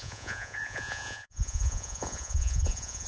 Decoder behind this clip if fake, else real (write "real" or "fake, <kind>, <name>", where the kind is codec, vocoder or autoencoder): fake, vocoder, Vocos